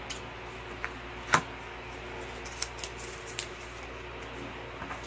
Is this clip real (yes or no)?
yes